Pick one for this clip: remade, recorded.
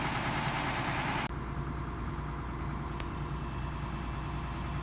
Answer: recorded